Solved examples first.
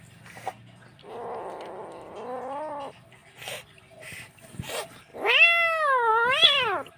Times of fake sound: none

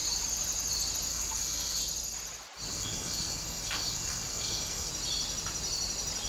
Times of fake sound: 1.1-1.8 (codec, SNAC); 2.7-4.9

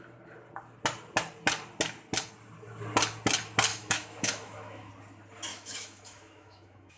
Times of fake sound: 3.7-4.9 (autoencoder, DAC-VAE); 5.5-7.0

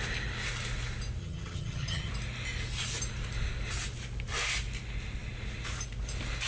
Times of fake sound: 1.2-2.1 (vocoder, HiFi-GAN)

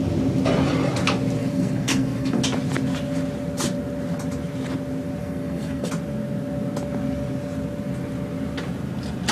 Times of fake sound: 1.4-2.4 (codec, SNAC); 5.2-5.9